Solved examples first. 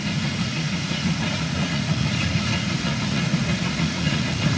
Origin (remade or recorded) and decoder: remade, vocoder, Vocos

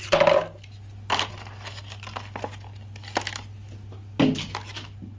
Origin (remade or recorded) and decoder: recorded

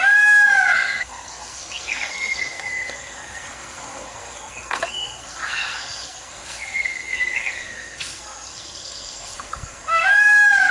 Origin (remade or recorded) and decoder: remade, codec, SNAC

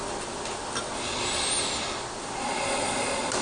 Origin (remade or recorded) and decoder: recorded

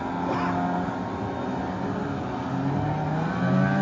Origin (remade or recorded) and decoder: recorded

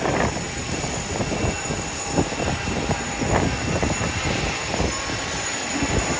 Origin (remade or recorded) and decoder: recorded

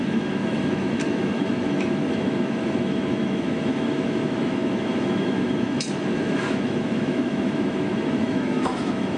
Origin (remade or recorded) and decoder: remade, autoencoder, DAC-VAE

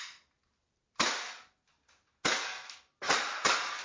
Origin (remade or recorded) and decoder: recorded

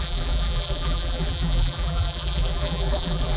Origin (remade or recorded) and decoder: remade, vocoder, BigVGAN v2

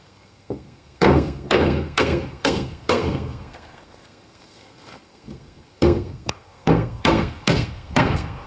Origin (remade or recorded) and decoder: remade, codec, SNAC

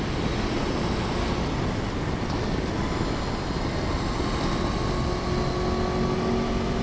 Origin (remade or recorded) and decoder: recorded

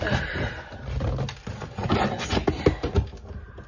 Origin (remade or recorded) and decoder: recorded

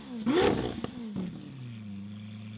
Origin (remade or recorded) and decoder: recorded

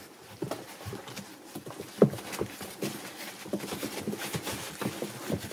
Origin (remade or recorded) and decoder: remade, vocoder, BigVGAN v2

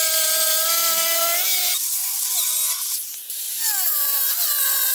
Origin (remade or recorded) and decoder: recorded